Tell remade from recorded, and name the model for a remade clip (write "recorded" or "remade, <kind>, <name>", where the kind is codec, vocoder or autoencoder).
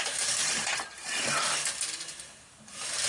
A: recorded